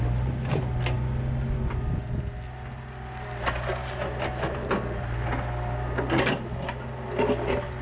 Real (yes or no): yes